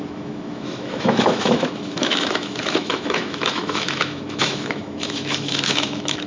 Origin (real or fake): fake